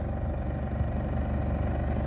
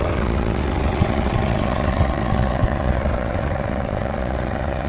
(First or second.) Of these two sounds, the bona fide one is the first